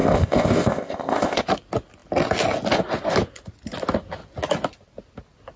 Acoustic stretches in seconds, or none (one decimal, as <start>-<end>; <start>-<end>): 1.4-5.6